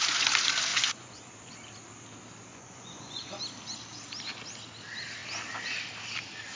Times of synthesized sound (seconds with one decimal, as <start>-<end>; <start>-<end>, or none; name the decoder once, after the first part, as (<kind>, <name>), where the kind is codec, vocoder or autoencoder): 0.7-1.5 (vocoder, Vocos); 2.5-3.4